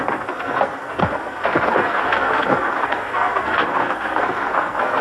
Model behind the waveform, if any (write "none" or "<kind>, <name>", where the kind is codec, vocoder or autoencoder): codec, SNAC